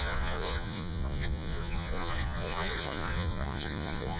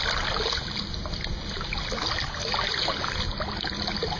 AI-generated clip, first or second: first